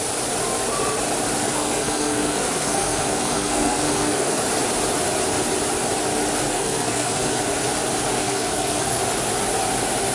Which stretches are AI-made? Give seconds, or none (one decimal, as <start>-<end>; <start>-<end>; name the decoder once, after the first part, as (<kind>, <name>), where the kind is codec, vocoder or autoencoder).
1.4-4.4 (codec, SNAC); 6.5-7.4; 8.2-9.0